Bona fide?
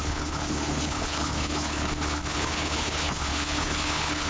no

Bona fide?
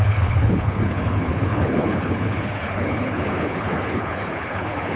no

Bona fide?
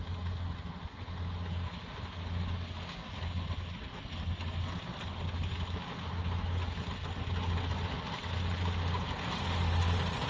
yes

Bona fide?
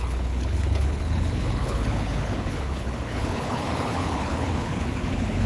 no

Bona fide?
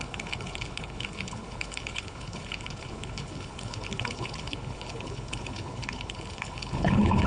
no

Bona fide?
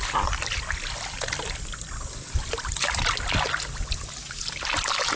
yes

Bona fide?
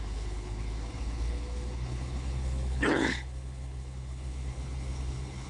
no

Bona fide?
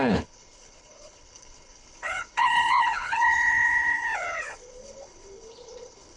no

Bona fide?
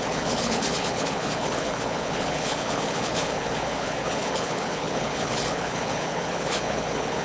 no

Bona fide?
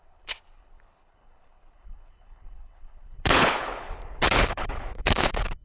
no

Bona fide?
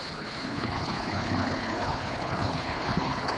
no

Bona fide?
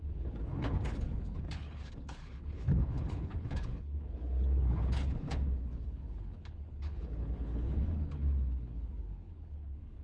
no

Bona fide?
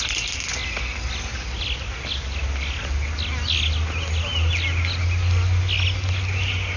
yes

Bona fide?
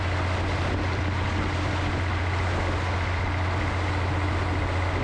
yes